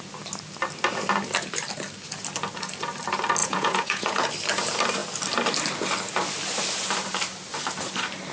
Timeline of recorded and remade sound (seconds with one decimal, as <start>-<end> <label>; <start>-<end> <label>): 0.0-3.4 recorded; 3.4-4.3 remade; 4.3-8.3 recorded